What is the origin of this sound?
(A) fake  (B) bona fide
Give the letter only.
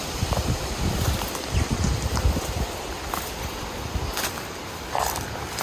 A